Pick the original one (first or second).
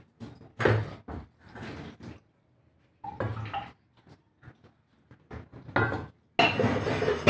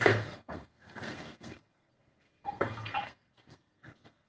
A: first